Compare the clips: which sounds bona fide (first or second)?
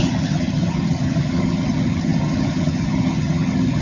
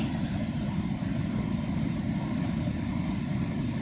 second